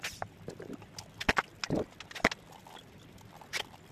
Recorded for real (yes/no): yes